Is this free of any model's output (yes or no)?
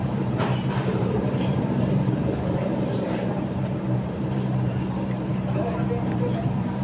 no